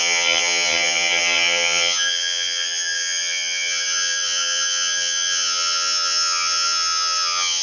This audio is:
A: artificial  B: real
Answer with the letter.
A